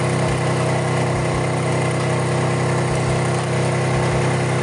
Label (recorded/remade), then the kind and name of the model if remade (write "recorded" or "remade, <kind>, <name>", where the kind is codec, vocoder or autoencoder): recorded